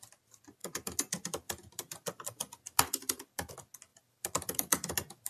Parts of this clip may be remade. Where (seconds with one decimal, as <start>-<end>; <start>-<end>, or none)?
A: 0.6-3.5; 3.9-5.3